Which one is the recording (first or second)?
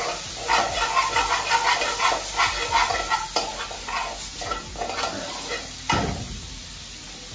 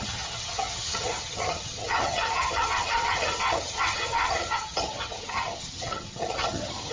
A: first